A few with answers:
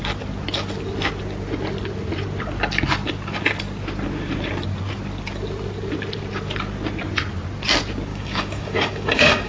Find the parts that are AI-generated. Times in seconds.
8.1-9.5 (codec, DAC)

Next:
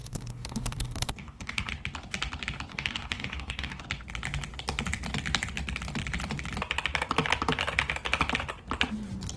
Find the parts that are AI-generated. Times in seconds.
0.0-1.7 (codec, DAC); 2.7-3.8

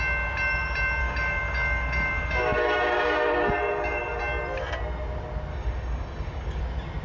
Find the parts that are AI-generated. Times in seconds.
1.0-4.2 (codec, DAC); 5.5-6.6

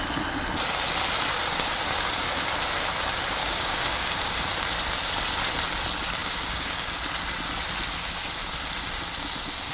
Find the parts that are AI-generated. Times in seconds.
3.4-4.2 (codec, DAC); 6.2-6.9

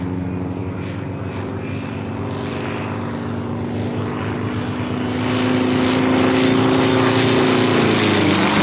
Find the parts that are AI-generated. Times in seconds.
none